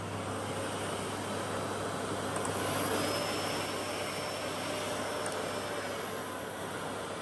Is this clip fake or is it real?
real